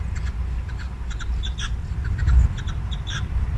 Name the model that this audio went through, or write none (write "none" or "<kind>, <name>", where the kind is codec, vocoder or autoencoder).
none